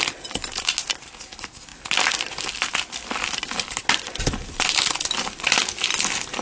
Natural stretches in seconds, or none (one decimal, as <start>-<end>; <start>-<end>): 0.0-6.4